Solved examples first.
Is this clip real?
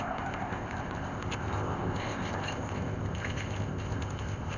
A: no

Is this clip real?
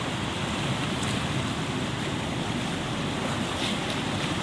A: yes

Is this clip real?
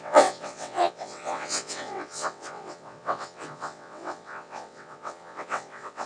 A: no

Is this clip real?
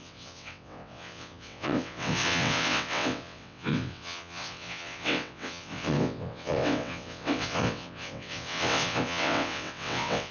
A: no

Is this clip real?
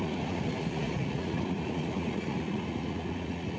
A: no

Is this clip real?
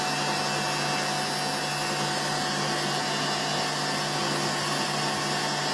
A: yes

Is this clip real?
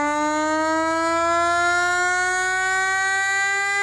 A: yes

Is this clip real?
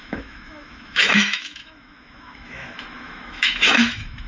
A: no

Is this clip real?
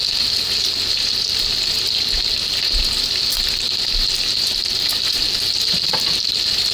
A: yes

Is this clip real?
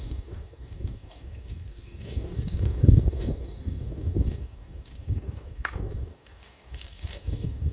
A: no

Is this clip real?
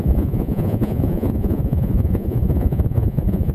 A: no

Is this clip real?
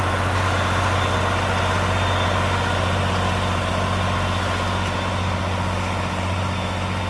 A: yes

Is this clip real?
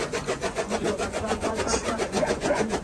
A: no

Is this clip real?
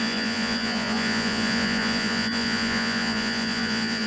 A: no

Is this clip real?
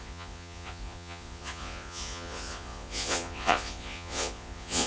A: no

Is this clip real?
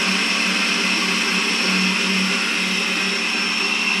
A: yes